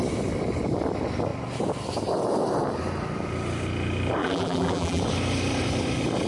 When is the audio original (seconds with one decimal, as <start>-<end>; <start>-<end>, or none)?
0.0-4.2; 5.0-6.3